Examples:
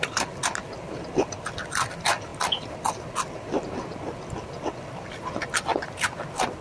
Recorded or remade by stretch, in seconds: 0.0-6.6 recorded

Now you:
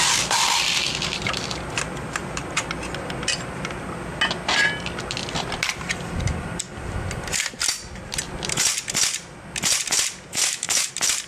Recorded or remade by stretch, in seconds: 0.0-10.3 recorded; 10.3-10.9 remade; 10.9-11.3 recorded

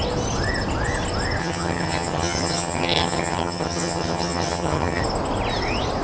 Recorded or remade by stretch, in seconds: 0.0-1.4 recorded; 1.4-5.0 remade; 5.0-6.0 recorded

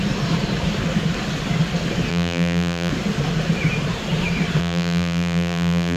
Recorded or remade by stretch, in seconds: 0.0-2.1 recorded; 2.1-2.9 remade; 2.9-4.6 recorded; 4.6-6.0 remade